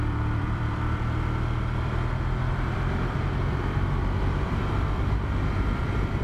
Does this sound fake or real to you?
fake